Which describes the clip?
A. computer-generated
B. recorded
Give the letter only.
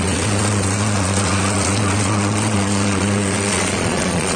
A